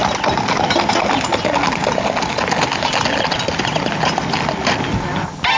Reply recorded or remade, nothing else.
recorded